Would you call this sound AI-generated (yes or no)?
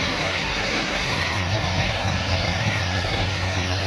yes